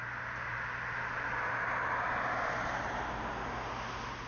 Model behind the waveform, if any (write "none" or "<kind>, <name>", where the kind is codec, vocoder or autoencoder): none